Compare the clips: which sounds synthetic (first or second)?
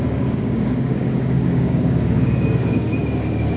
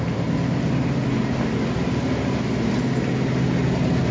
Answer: first